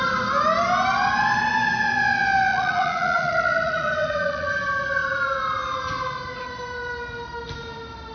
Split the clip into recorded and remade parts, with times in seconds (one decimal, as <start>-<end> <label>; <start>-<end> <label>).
0.0-2.5 recorded; 2.5-4.5 remade; 4.5-8.1 recorded